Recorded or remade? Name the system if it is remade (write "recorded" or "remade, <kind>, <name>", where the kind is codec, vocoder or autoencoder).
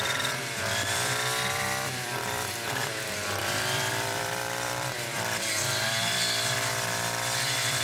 remade, vocoder, BigVGAN v2